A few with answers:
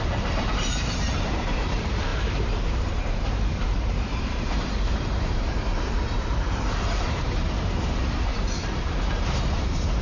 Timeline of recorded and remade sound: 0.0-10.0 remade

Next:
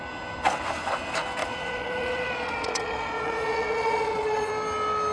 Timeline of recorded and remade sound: 0.0-1.4 recorded; 1.4-4.5 remade; 4.5-5.1 recorded

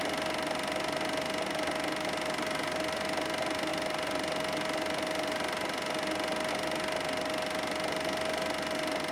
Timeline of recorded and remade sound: 0.0-9.1 recorded